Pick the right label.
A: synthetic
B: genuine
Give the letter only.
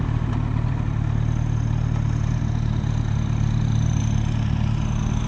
B